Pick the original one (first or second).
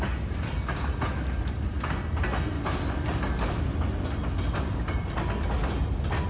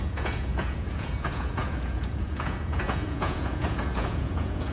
first